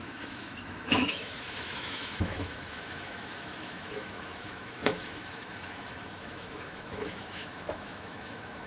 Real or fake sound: fake